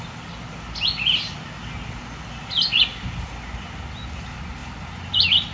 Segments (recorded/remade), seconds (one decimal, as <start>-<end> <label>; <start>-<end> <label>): 0.0-5.5 recorded